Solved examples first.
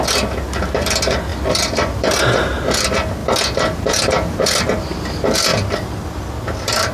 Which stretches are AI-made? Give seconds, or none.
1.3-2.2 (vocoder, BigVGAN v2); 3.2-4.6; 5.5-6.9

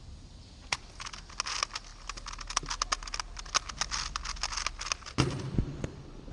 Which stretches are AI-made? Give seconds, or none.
none

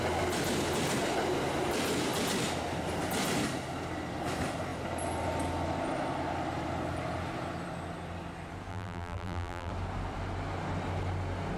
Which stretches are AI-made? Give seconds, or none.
8.7-9.7 (vocoder, BigVGAN v2)

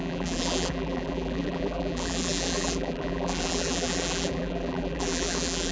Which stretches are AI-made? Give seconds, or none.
0.0-5.7 (vocoder, BigVGAN v2)